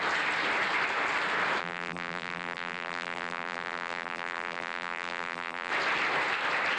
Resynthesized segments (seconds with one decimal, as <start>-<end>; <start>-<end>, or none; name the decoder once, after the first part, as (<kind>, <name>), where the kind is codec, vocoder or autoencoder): 1.6-5.7 (vocoder, BigVGAN v2)